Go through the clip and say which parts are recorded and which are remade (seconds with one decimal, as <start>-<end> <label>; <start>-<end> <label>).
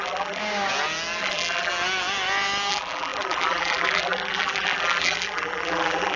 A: 0.0-0.4 remade; 0.4-1.2 recorded; 1.2-1.7 remade; 1.7-2.7 recorded; 2.7-6.2 remade